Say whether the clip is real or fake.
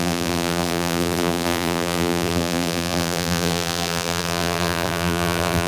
fake